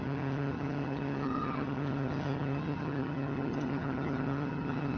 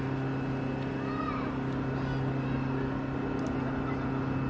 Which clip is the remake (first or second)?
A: first